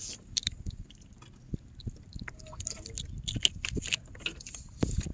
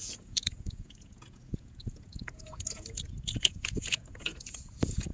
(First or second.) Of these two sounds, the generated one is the second